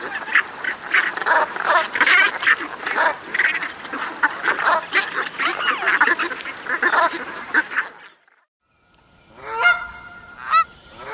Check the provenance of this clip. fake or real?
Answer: real